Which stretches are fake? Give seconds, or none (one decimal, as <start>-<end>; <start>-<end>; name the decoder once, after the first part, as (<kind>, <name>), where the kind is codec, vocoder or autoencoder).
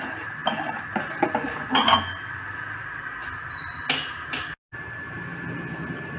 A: none